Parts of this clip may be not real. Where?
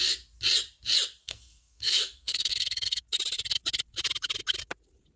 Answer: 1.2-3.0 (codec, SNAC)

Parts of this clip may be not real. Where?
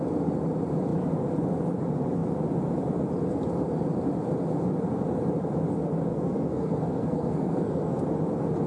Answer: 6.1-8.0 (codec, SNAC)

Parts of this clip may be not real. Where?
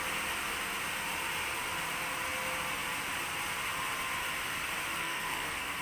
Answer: 5.0-5.8 (codec, SNAC)